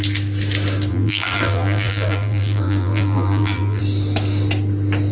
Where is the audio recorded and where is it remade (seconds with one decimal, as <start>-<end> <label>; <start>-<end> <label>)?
0.0-0.9 recorded; 0.9-3.8 remade; 3.8-5.1 recorded